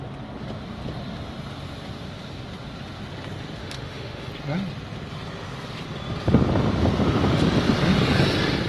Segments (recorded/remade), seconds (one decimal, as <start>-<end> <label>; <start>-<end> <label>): 0.0-3.6 recorded; 3.6-4.3 remade; 4.3-8.7 recorded